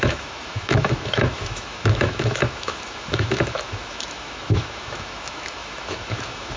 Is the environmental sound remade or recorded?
remade